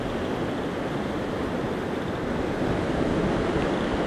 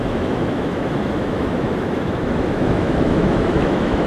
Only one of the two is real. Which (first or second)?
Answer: first